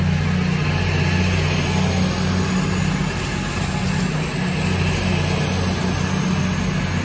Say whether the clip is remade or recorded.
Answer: recorded